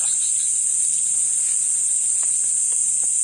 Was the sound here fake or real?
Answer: real